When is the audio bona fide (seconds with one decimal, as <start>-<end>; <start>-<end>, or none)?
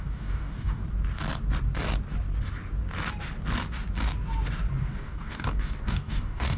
0.8-4.8